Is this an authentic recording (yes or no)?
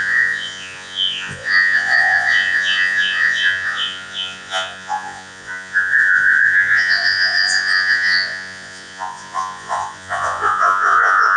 no